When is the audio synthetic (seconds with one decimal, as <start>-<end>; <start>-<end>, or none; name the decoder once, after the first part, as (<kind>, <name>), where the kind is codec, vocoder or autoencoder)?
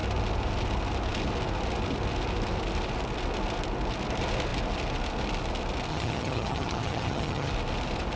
5.9-7.5 (vocoder, HiFi-GAN)